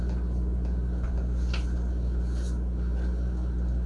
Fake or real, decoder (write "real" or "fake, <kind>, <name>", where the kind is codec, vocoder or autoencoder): real